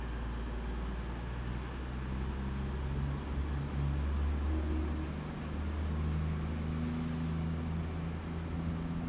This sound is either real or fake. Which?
real